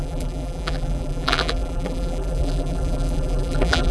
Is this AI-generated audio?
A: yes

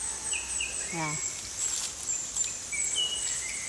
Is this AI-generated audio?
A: no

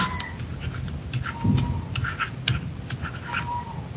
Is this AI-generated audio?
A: no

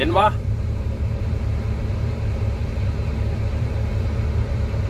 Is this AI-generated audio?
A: yes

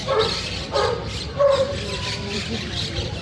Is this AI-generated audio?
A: yes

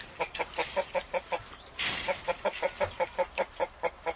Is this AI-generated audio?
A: yes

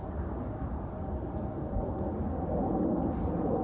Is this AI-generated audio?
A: no